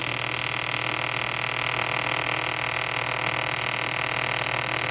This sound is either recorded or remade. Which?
recorded